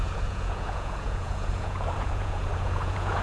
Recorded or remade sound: remade